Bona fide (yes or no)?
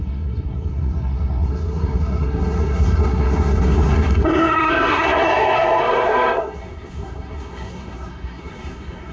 no